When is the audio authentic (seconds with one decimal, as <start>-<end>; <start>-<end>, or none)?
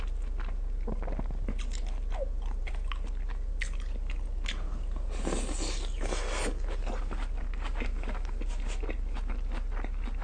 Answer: 0.0-10.2